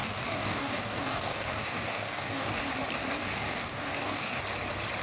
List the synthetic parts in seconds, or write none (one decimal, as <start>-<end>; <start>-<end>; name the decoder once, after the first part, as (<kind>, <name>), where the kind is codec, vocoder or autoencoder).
0.0-2.6 (codec, DAC); 3.2-4.4